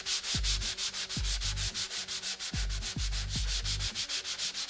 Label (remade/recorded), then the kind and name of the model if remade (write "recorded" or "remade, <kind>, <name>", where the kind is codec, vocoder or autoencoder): recorded